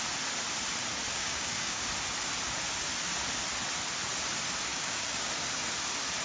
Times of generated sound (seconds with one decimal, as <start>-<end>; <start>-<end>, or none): 1.2-1.8; 4.7-5.3